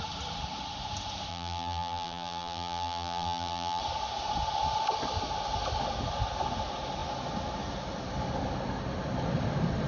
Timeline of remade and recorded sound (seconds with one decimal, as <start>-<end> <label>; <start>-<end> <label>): 0.0-1.3 recorded; 1.3-3.8 remade; 3.8-9.9 recorded